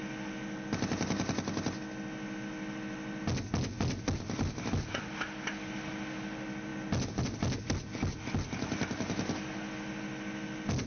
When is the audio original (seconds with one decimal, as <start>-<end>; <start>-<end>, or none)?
0.0-10.9